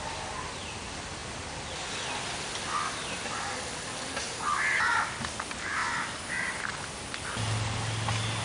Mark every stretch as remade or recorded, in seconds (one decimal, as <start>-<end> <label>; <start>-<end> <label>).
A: 0.0-8.4 recorded